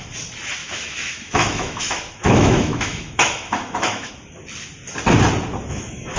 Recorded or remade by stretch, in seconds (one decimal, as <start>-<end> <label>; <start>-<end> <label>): 0.0-0.6 recorded; 0.6-4.1 remade; 4.1-5.7 recorded; 5.7-6.2 remade